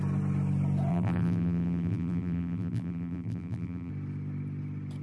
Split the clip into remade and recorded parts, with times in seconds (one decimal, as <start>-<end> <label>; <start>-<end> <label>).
0.0-0.9 recorded; 0.9-3.9 remade; 3.9-5.0 recorded